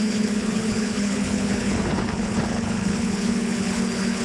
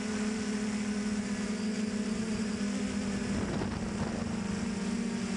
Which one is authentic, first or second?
second